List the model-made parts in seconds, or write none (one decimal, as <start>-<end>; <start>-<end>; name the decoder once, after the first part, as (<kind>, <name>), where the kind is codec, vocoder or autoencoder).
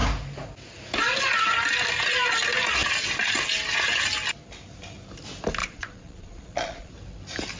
5.6-6.9 (vocoder, Vocos)